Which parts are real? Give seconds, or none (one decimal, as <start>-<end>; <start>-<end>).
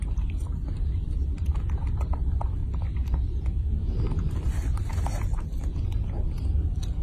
2.6-5.6